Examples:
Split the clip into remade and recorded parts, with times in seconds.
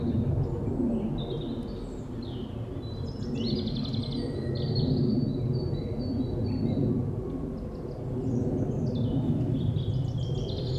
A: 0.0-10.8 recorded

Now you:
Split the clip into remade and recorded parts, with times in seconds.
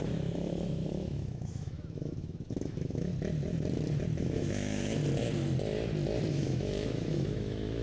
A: 0.0-3.1 remade; 3.1-4.2 recorded; 4.2-5.0 remade; 5.0-6.3 recorded; 6.3-7.8 remade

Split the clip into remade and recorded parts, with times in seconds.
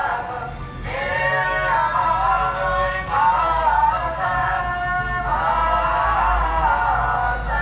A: 0.0-4.6 remade; 4.6-7.6 recorded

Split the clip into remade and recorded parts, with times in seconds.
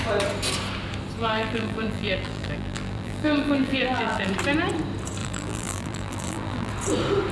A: 0.0-1.2 recorded; 1.2-4.3 remade; 4.3-5.2 recorded; 5.2-6.7 remade; 6.7-7.3 recorded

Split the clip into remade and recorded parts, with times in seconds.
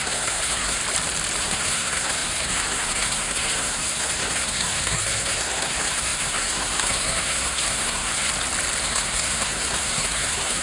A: 0.0-0.8 remade; 0.8-1.4 recorded; 1.4-8.3 remade; 8.3-8.8 recorded; 8.8-10.6 remade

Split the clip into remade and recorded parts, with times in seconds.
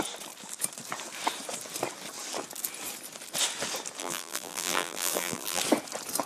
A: 0.0-4.0 recorded; 4.0-5.6 remade; 5.6-6.3 recorded